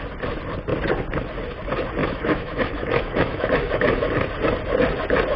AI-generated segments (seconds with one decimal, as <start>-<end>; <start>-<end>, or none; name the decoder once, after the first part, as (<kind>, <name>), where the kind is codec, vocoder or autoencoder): 2.0-4.1 (autoencoder, DAC-VAE)